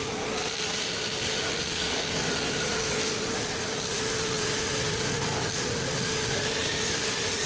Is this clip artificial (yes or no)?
no